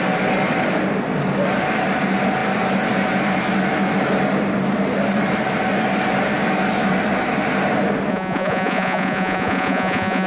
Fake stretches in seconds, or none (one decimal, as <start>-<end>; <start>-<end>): 8.1-10.3